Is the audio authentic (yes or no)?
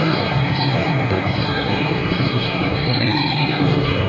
no